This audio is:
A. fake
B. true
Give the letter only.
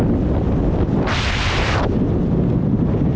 B